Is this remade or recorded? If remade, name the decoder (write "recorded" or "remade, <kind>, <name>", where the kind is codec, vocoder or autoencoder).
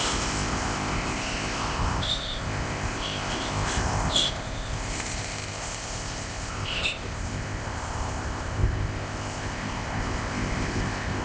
remade, codec, ZipCodec